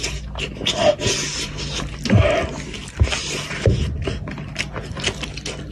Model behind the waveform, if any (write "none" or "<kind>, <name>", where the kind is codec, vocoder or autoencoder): none